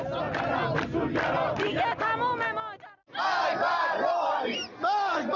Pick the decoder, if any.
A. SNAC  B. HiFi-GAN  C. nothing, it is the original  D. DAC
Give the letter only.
C